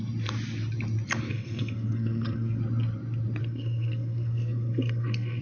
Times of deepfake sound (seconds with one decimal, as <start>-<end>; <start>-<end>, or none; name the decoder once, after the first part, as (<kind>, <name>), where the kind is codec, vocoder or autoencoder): 1.3-2.6 (codec, SNAC); 3.4-5.4